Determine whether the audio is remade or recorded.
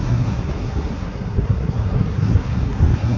remade